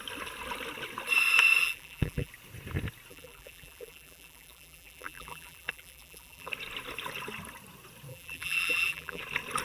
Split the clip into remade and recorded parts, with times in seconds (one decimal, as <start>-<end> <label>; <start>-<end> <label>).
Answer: 0.0-1.6 recorded; 1.6-2.3 remade; 2.3-3.1 recorded; 3.1-6.5 remade; 6.5-8.1 recorded; 8.1-9.2 remade; 9.2-9.6 recorded